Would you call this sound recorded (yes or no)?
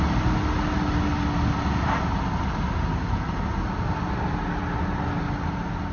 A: yes